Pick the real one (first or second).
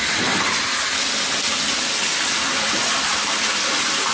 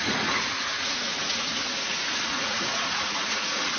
first